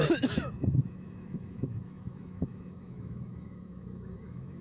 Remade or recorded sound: remade